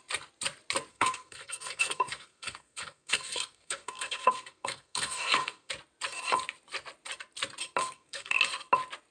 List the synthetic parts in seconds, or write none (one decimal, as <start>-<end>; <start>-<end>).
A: 0.9-5.7; 7.8-8.4